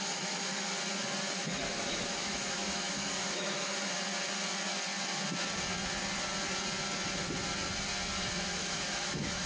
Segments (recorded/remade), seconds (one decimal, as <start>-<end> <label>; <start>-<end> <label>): 0.0-0.7 remade; 0.7-1.6 recorded; 1.6-3.7 remade; 3.7-8.4 recorded; 8.4-9.5 remade